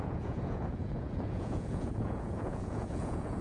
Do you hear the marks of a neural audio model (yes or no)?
yes